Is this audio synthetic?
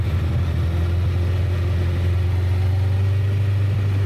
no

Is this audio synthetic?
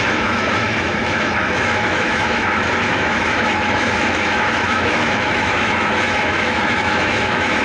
yes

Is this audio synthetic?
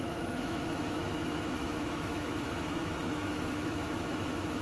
yes